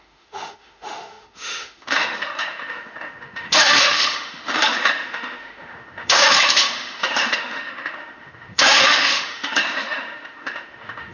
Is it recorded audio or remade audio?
remade